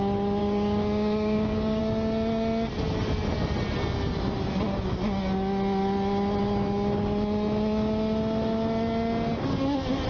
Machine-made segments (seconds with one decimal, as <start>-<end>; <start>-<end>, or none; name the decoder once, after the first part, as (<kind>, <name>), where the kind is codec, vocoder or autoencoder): 0.4-1.8 (codec, DAC)